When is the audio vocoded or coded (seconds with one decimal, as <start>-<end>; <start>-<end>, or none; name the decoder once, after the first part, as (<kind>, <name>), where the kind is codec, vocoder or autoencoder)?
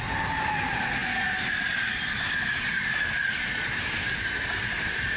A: none